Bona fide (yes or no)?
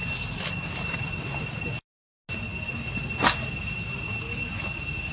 yes